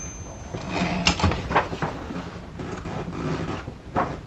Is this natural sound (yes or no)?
yes